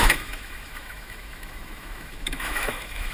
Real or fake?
fake